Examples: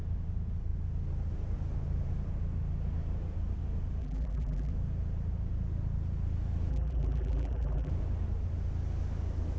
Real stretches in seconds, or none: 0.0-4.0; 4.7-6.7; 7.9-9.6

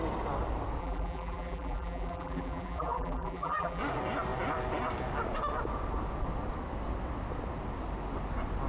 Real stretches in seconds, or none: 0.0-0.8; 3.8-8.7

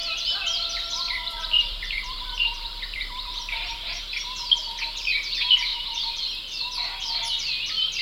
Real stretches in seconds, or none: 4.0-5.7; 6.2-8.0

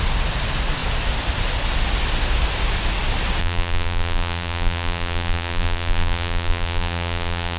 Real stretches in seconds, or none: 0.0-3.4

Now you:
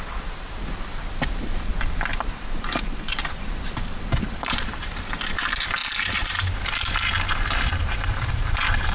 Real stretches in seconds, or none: 0.0-2.1; 3.1-8.9

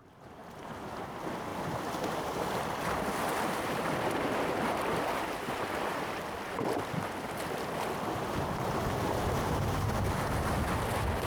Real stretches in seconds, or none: 0.0-0.4; 0.9-1.5; 6.1-11.3